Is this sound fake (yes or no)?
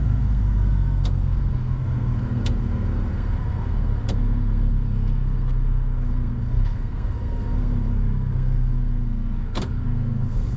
yes